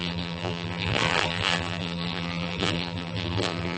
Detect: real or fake fake